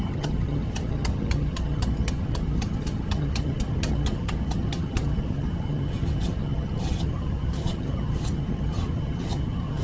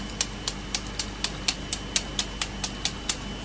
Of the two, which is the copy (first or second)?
first